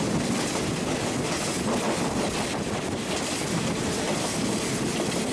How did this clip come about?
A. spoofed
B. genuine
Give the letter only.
B